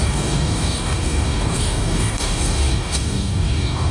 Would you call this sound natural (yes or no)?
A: no